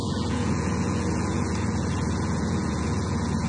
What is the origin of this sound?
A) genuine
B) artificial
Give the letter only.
B